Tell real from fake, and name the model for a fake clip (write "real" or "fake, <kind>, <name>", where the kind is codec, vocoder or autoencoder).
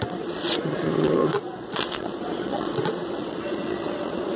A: fake, vocoder, Vocos